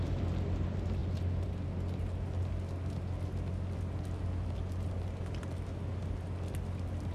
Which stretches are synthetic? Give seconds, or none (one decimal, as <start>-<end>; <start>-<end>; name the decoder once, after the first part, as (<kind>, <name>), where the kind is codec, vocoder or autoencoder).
none